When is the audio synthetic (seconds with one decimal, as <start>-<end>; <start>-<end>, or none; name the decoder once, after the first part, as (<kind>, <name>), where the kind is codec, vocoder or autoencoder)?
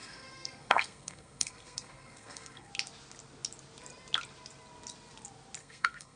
0.0-2.7 (codec, SNAC); 5.6-6.2